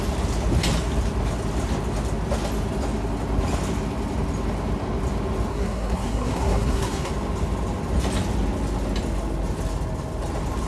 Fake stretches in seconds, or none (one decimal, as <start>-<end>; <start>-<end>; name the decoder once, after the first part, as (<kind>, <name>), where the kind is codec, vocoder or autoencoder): 5.5-7.1 (codec, SNAC)